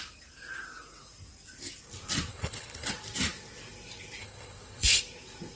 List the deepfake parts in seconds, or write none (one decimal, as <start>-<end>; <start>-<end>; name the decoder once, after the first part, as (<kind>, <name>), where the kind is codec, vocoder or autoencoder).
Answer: 2.3-2.9 (codec, HILCodec); 4.2-5.0